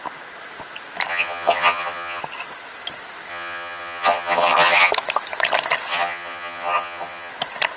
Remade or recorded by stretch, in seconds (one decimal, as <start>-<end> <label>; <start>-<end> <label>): 0.0-1.1 recorded; 1.1-2.2 remade; 2.2-3.3 recorded; 3.3-4.9 remade; 4.9-5.9 recorded; 5.9-7.3 remade; 7.3-7.8 recorded